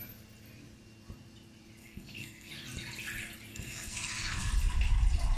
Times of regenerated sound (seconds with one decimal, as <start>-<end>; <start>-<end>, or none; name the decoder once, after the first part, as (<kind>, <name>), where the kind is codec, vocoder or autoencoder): 1.8-2.5 (codec, SNAC); 3.5-4.5